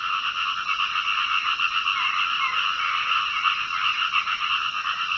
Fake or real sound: real